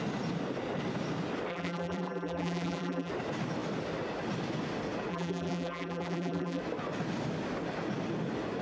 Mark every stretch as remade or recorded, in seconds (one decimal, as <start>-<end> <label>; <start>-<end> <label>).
0.0-1.5 recorded; 1.5-3.1 remade; 3.1-5.1 recorded; 5.1-6.6 remade; 6.6-8.6 recorded